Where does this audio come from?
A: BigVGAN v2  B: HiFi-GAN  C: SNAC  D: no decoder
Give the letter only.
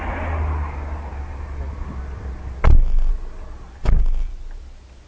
D